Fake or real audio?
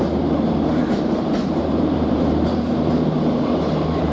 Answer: fake